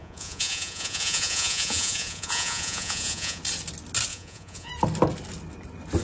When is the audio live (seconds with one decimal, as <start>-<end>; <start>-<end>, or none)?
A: 3.4-4.1; 4.7-6.0